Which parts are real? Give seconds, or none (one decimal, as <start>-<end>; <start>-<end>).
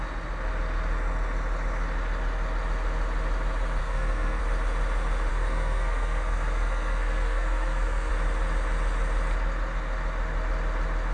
0.0-3.8; 4.4-5.3; 8.1-11.1